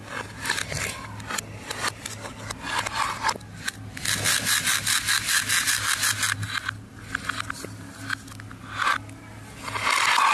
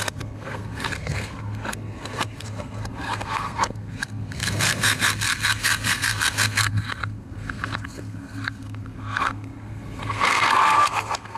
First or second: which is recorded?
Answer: first